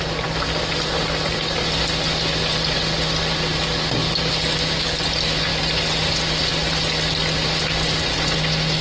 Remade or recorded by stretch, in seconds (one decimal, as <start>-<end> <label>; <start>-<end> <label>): 0.0-8.8 recorded

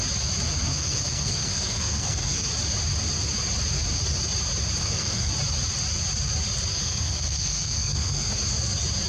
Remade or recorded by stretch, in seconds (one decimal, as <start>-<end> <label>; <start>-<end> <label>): 0.0-0.7 recorded; 0.7-2.5 remade; 2.5-4.8 recorded; 4.8-5.3 remade; 5.3-6.7 recorded; 6.7-8.3 remade; 8.3-9.1 recorded

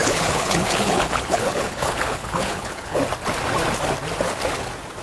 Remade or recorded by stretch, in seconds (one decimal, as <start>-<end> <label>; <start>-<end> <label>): 0.0-3.0 remade; 3.0-5.0 recorded

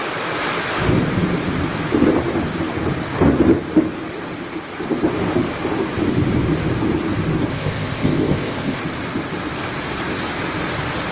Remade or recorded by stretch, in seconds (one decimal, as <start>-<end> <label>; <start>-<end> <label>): 0.0-7.5 recorded; 7.5-8.8 remade; 8.8-11.1 recorded

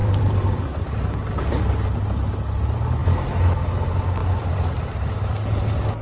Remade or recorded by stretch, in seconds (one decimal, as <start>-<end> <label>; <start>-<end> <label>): 0.0-0.7 remade; 0.7-4.2 recorded; 4.2-5.2 remade; 5.2-6.0 recorded